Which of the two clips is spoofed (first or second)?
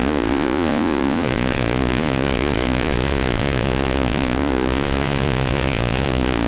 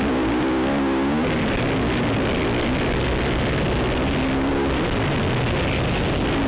first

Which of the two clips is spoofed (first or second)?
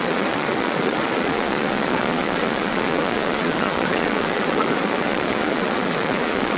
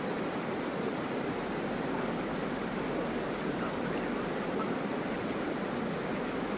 first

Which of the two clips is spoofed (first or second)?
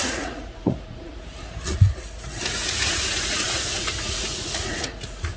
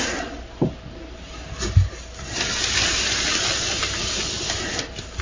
first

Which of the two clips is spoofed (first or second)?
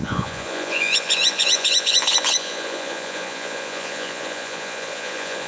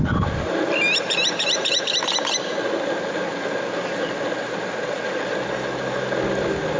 first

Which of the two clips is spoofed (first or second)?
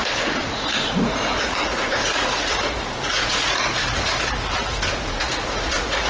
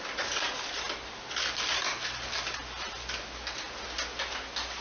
first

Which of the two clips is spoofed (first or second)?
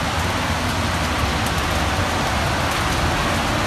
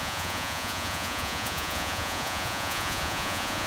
second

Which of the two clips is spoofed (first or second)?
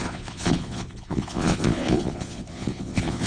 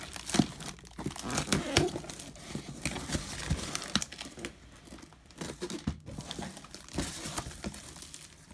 first